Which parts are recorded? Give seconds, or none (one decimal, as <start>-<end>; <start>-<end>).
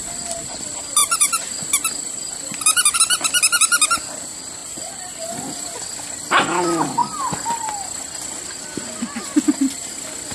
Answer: 0.0-1.0; 1.5-4.6; 5.8-10.3